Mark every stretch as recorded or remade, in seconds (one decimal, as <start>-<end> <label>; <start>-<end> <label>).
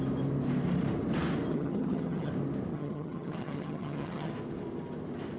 0.0-1.5 recorded; 1.5-2.3 remade; 2.3-2.7 recorded; 2.7-4.3 remade; 4.3-5.4 recorded